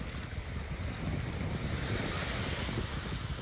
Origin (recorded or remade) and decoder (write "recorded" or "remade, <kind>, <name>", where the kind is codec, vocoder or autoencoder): recorded